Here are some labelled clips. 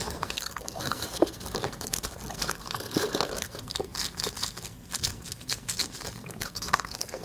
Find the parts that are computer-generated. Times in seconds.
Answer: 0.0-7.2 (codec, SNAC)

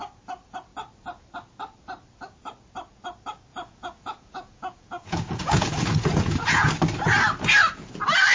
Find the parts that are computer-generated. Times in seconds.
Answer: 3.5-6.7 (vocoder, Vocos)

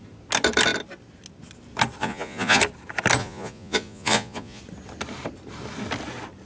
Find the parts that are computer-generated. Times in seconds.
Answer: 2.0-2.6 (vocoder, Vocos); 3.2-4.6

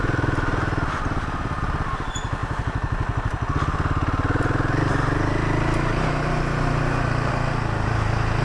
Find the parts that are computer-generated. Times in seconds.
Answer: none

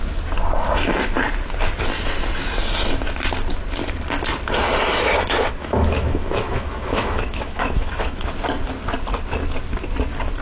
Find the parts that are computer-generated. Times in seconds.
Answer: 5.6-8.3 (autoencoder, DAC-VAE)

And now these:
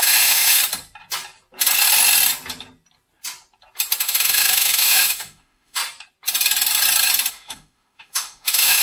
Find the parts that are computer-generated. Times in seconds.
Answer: 0.0-0.6 (autoencoder, DAC-VAE); 4.0-5.8; 7.3-8.8

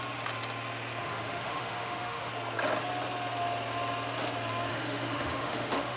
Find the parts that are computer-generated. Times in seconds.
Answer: 1.0-2.3 (autoencoder, DAC-VAE); 4.7-6.0

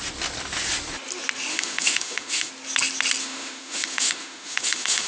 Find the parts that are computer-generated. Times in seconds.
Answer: 1.5-2.5 (autoencoder, DAC-VAE); 3.2-5.1